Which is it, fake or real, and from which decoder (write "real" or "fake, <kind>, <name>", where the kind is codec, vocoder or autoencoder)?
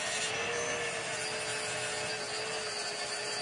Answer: real